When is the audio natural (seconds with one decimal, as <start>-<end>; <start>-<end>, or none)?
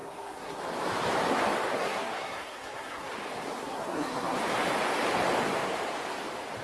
0.6-1.7; 3.1-3.6; 4.4-6.6